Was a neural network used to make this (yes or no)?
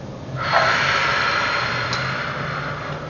no